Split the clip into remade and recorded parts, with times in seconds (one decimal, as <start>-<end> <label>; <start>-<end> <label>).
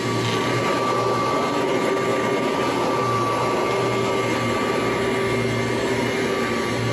0.0-6.9 recorded